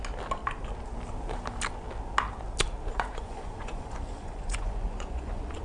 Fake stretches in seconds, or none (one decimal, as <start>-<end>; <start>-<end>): 2.9-5.6